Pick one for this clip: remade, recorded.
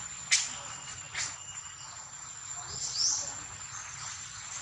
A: recorded